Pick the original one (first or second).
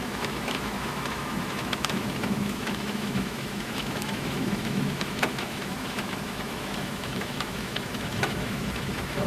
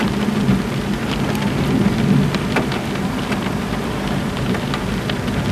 second